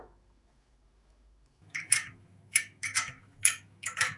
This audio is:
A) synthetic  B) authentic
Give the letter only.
A